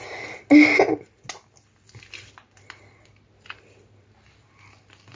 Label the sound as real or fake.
real